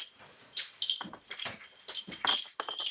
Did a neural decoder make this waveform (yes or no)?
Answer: no